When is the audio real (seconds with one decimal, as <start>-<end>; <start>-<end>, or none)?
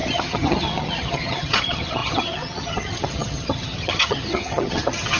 none